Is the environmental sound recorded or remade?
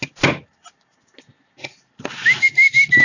recorded